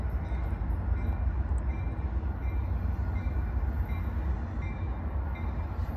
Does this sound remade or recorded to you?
recorded